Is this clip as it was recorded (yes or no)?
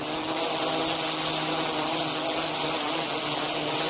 yes